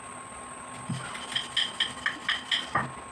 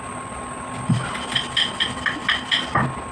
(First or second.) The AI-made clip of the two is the second